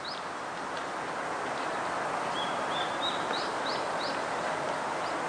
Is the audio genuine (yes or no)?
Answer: yes